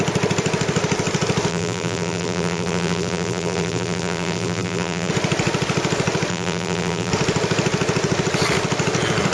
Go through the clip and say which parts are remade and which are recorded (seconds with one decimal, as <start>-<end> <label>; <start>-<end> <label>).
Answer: 0.0-1.5 recorded; 1.5-5.1 remade; 5.1-6.3 recorded; 6.3-7.1 remade; 7.1-9.3 recorded